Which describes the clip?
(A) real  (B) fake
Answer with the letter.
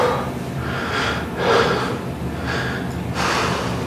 A